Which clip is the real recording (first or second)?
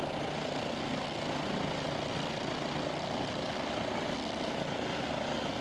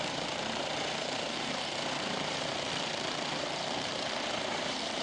first